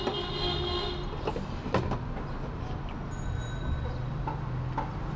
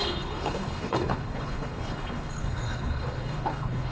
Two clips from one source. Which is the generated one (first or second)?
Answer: second